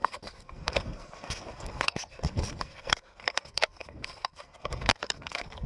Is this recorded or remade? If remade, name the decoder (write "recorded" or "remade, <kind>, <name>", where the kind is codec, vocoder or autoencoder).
remade, codec, SNAC